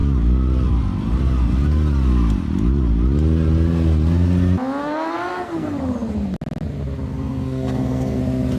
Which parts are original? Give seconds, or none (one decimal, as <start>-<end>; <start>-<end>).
0.0-4.8; 5.8-7.1; 8.2-8.6